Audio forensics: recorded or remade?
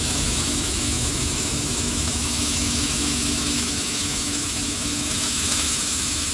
remade